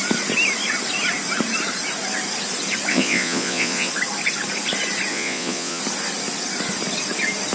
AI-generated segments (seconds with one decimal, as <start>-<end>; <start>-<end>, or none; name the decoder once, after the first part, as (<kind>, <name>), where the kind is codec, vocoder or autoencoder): 2.9-3.9 (vocoder, Vocos); 5.1-5.8